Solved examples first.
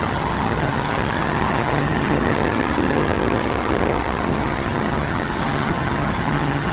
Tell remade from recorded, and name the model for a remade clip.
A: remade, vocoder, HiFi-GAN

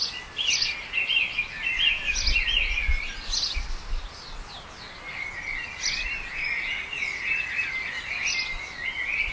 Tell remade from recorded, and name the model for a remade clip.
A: recorded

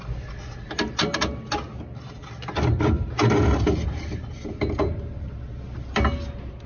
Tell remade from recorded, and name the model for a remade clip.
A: recorded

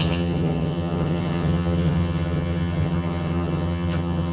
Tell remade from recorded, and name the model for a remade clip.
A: remade, vocoder, HiFi-GAN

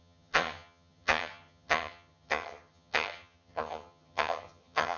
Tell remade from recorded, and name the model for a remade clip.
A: remade, vocoder, HiFi-GAN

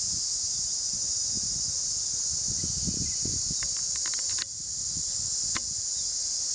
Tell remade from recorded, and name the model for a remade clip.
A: recorded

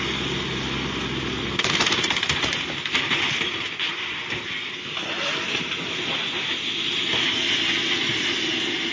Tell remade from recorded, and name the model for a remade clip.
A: recorded